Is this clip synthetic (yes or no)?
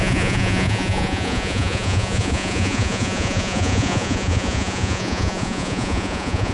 yes